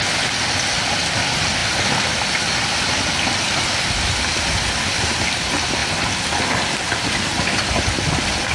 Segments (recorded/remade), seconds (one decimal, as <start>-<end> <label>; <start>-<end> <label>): 0.0-8.5 recorded